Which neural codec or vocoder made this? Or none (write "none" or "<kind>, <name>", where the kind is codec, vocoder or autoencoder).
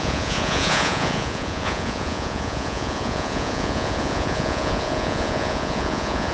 vocoder, Vocos